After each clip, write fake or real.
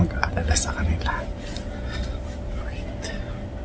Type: real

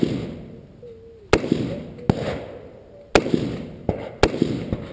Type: real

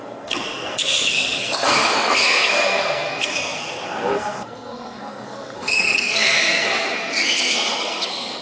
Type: fake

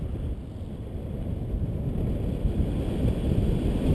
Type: real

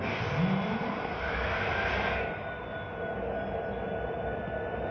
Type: real